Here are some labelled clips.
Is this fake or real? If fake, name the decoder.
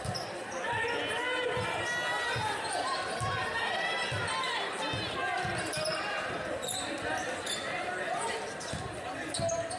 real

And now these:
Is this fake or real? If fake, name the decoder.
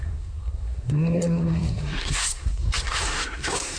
fake, codec, SNAC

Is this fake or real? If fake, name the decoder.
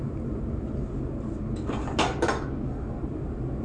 real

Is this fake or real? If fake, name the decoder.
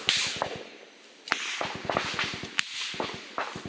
real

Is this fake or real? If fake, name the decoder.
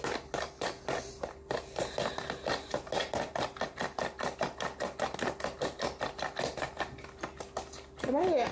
real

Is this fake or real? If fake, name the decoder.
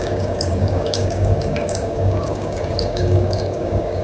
fake, codec, DAC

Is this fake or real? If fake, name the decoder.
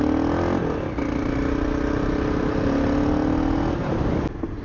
real